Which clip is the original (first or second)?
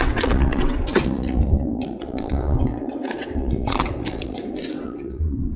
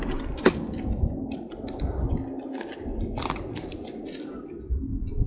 second